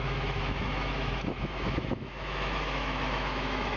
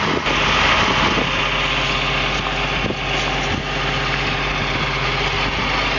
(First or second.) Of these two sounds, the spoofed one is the first